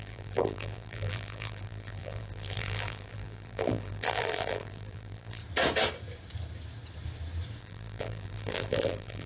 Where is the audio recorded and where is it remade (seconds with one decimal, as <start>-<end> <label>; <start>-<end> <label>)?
0.0-5.4 remade; 5.4-7.6 recorded; 7.6-9.3 remade